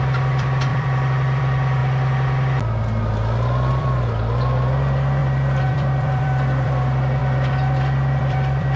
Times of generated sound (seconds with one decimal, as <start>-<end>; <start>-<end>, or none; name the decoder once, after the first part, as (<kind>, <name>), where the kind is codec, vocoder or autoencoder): 0.0-1.8 (vocoder, BigVGAN v2); 3.7-8.8